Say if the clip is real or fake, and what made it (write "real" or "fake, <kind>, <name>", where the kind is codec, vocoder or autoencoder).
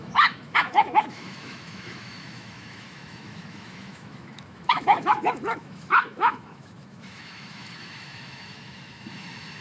fake, autoencoder, DAC-VAE